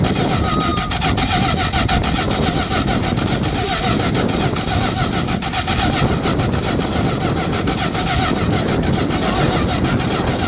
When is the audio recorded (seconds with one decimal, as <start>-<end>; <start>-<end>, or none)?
0.0-10.5